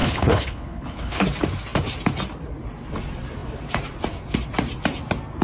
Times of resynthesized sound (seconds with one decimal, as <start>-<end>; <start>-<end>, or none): 0.0-1.2